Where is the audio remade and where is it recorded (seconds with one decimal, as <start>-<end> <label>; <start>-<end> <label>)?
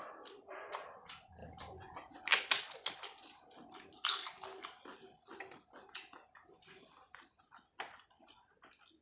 0.0-9.0 recorded